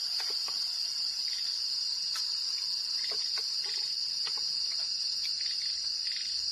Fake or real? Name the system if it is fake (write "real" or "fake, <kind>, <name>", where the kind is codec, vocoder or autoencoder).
real